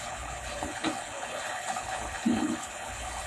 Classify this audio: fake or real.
fake